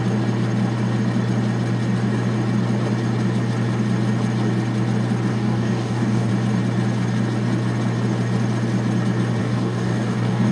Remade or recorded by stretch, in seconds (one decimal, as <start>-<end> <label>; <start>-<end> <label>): 0.0-5.3 recorded; 5.3-6.3 remade; 6.3-9.4 recorded; 9.4-10.5 remade